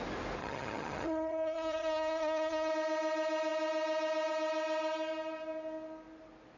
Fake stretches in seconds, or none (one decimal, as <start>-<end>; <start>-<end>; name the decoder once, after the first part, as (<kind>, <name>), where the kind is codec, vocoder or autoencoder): 0.4-2.7 (vocoder, HiFi-GAN)